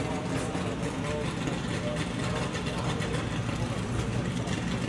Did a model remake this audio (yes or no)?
no